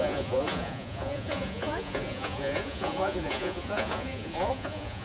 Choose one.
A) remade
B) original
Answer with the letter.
A